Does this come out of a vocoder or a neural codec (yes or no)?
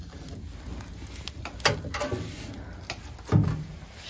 no